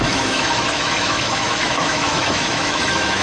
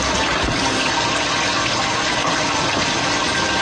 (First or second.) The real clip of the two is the second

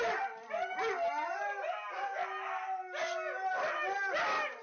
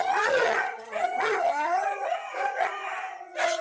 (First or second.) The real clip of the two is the first